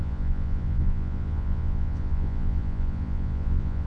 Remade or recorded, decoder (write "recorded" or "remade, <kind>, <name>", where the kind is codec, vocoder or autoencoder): remade, vocoder, Vocos